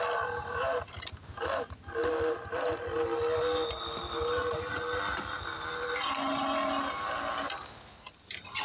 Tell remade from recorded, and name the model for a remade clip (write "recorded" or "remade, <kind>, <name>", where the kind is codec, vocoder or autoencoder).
recorded